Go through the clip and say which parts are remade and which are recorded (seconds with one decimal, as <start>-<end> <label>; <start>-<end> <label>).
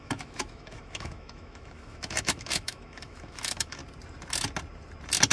0.0-3.8 remade; 3.8-5.3 recorded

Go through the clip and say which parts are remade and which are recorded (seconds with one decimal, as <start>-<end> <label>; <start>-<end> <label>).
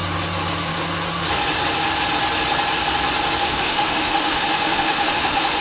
0.0-3.4 recorded; 3.4-5.6 remade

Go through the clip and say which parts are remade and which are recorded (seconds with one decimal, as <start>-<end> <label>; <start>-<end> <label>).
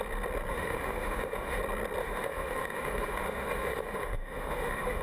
0.0-0.5 recorded; 0.5-1.6 remade; 1.6-2.0 recorded; 2.0-5.0 remade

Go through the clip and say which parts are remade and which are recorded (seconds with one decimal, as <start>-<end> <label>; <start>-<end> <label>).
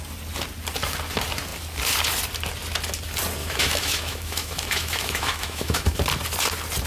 0.0-3.4 recorded; 3.4-6.0 remade; 6.0-6.9 recorded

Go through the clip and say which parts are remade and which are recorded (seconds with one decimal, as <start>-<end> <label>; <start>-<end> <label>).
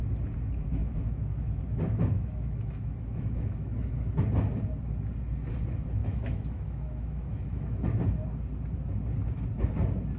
0.0-0.8 recorded; 0.8-4.2 remade; 4.2-6.0 recorded; 6.0-8.0 remade; 8.0-10.2 recorded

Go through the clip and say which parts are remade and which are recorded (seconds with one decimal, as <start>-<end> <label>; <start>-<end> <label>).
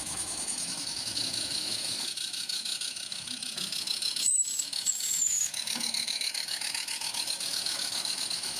0.0-8.6 remade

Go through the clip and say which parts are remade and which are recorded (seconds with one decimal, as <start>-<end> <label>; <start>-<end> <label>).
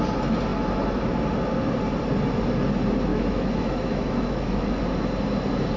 0.0-3.1 recorded; 3.1-4.8 remade; 4.8-5.8 recorded